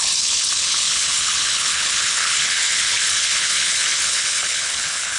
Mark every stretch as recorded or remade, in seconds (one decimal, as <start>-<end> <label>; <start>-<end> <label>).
0.0-5.2 remade